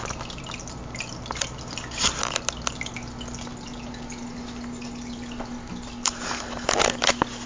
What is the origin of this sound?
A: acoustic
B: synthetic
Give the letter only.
A